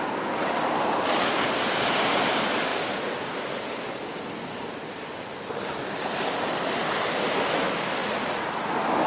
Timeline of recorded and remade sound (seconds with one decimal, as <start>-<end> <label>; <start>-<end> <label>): 0.0-8.0 recorded; 8.0-8.7 remade; 8.7-9.1 recorded